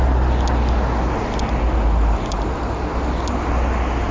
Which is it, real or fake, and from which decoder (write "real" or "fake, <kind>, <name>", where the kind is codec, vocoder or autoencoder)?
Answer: real